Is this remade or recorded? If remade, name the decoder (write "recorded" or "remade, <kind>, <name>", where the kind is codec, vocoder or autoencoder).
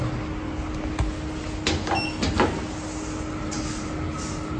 recorded